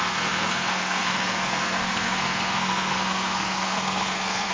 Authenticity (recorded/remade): remade